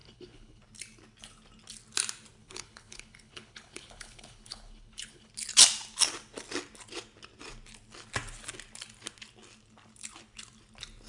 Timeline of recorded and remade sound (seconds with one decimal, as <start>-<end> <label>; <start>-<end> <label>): 0.0-0.6 remade; 0.6-2.4 recorded; 2.4-5.3 remade; 5.3-11.1 recorded